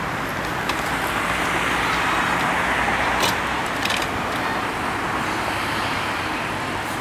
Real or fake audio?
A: real